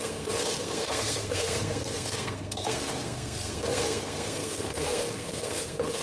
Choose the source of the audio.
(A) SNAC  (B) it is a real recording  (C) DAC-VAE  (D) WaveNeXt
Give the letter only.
A